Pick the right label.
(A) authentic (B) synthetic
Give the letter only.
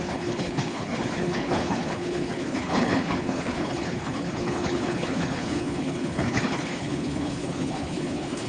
B